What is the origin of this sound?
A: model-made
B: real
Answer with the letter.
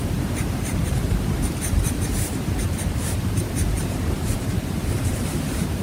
A